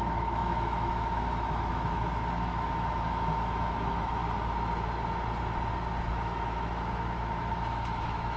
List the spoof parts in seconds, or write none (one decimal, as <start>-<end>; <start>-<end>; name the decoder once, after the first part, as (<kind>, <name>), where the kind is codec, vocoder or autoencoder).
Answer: 0.0-4.2 (autoencoder, DAC-VAE); 6.1-8.4